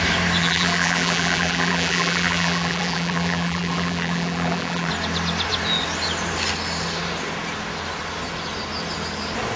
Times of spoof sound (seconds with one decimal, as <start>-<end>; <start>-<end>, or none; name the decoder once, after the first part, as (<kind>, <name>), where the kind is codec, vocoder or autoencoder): 0.4-4.9 (vocoder, BigVGAN v2)